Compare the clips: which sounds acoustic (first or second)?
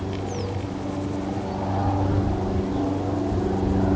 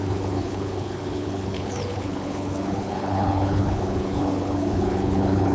first